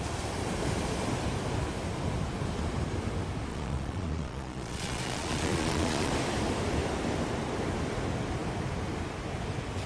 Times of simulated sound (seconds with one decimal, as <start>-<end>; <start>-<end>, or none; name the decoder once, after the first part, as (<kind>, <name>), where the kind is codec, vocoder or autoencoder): 3.5-6.1 (vocoder, Vocos)